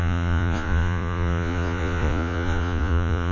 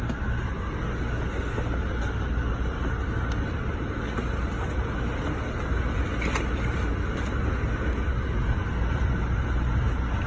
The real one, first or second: second